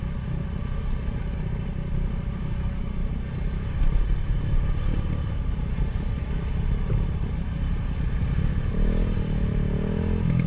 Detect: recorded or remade recorded